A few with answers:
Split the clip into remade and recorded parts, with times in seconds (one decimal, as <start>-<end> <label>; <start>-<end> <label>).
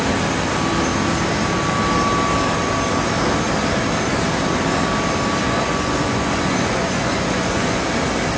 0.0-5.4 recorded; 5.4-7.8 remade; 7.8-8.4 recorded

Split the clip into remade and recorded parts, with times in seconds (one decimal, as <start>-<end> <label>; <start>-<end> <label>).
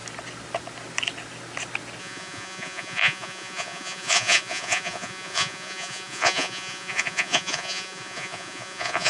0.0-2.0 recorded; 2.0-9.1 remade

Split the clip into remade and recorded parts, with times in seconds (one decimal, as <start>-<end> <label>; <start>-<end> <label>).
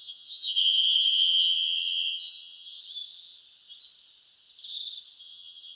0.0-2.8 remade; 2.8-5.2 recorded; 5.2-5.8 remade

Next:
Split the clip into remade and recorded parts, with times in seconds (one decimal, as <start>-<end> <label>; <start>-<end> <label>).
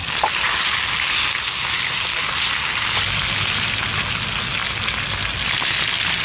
0.0-6.2 recorded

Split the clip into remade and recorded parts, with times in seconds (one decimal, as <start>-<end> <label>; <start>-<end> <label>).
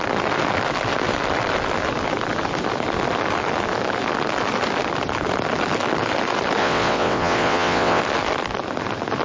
0.0-6.6 recorded; 6.6-8.0 remade; 8.0-9.2 recorded